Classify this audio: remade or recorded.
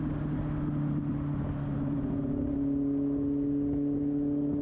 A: recorded